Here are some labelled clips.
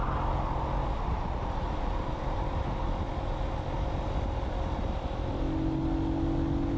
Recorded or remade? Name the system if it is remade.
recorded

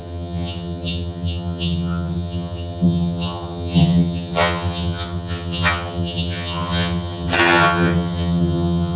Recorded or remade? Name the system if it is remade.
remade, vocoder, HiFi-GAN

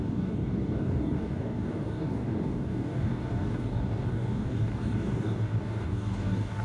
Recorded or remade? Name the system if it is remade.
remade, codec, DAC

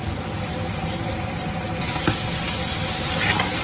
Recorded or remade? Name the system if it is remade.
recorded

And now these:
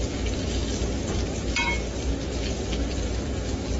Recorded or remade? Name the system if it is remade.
recorded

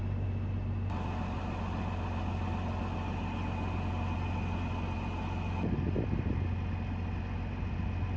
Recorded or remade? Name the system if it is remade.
recorded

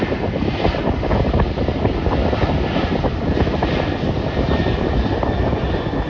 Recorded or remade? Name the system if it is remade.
recorded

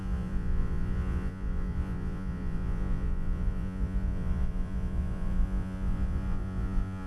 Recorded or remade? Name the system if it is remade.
remade, vocoder, Vocos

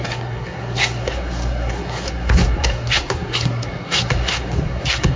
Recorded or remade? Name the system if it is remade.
remade, codec, SNAC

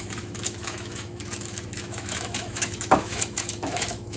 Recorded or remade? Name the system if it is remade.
remade, autoencoder, DAC-VAE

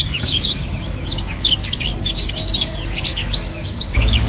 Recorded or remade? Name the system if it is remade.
remade, codec, DAC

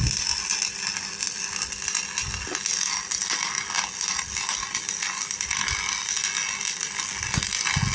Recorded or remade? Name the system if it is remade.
recorded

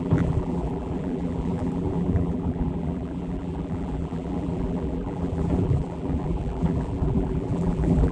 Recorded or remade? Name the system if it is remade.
remade, vocoder, BigVGAN v2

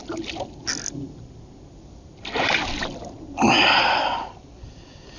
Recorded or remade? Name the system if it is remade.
recorded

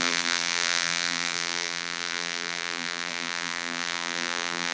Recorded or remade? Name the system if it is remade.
remade, vocoder, BigVGAN v2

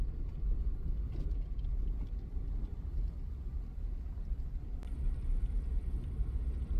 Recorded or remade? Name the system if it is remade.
recorded